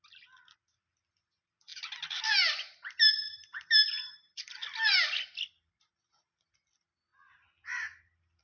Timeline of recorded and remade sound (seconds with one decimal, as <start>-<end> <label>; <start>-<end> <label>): 0.0-7.1 remade; 7.1-8.4 recorded